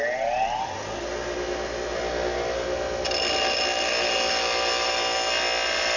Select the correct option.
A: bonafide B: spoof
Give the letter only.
A